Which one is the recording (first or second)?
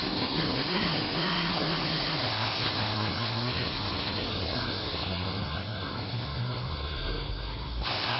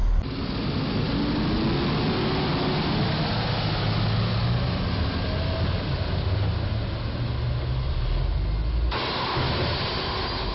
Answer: second